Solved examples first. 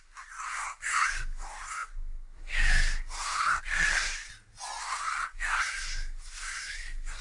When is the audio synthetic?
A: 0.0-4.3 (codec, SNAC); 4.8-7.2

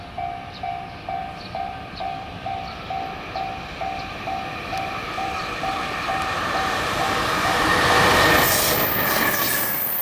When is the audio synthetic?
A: 1.2-2.7 (vocoder, BigVGAN v2); 4.1-8.2

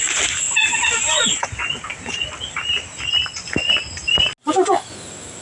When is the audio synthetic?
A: none

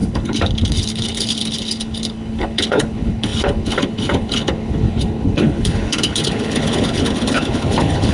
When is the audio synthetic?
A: 0.0-8.1 (codec, HILCodec)